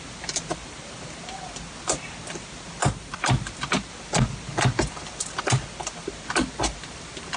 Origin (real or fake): real